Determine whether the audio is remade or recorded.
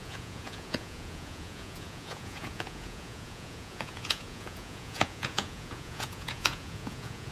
remade